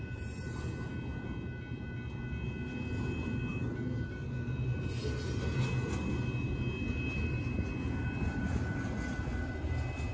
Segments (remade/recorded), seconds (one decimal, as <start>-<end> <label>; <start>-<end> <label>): 0.0-10.1 recorded